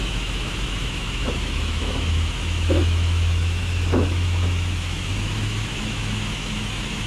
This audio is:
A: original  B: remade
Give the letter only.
B